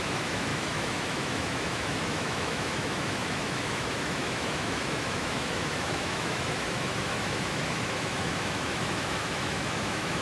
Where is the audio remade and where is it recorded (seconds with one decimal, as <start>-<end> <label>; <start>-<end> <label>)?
0.0-10.2 remade